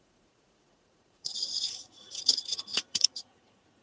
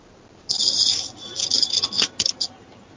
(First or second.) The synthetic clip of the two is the first